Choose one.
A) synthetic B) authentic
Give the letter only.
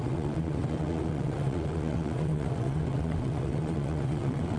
A